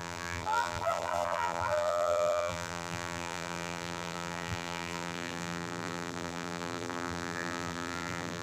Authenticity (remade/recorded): remade